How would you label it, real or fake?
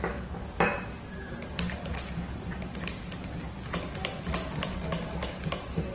real